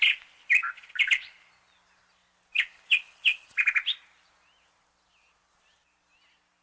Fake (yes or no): no